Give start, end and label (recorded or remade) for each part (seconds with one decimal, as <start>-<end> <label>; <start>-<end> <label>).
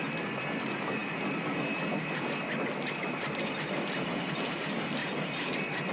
0.0-5.9 recorded